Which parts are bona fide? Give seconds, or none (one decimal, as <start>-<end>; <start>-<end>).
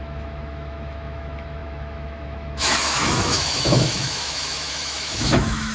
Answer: none